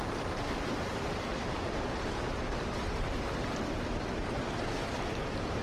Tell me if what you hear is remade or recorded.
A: recorded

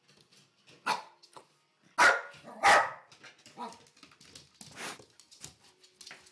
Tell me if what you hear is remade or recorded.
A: recorded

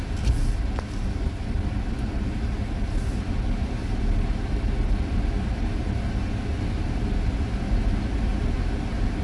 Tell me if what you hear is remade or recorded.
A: recorded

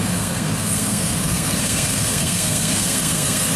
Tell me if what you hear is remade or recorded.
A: remade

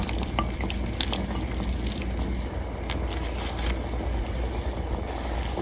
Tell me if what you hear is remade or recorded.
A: recorded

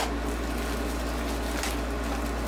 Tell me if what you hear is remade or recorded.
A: recorded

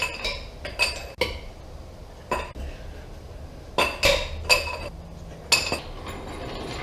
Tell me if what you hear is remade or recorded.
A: recorded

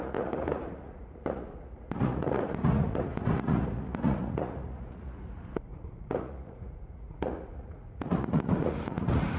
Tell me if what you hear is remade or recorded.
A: remade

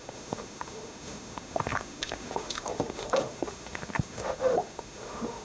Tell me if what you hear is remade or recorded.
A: remade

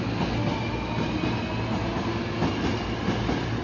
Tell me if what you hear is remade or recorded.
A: recorded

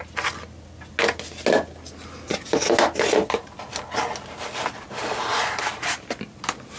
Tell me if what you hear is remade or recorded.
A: recorded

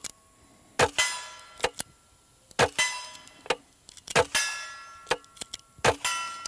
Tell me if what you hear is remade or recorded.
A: recorded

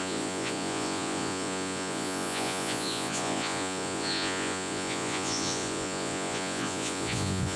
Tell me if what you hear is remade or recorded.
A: remade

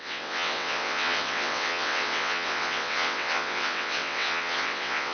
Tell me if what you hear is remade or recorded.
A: remade